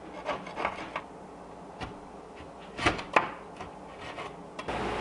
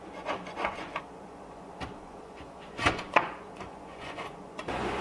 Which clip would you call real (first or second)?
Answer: first